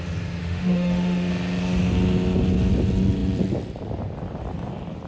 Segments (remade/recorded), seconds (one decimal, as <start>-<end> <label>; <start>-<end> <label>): 0.0-0.4 recorded; 0.4-1.3 remade; 1.3-5.1 recorded